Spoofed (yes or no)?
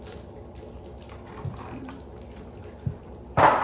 no